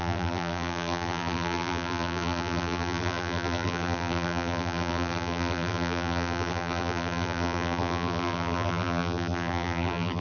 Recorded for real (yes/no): no